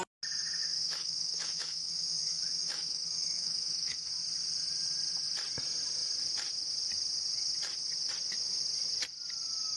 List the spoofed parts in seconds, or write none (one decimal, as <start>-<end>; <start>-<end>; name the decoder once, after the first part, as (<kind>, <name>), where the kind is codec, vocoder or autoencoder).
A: 0.6-4.1 (autoencoder, DAC-VAE)